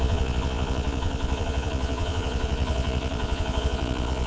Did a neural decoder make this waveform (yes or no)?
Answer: yes